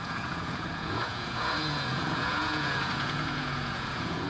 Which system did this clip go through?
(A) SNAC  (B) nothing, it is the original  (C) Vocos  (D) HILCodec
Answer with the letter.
C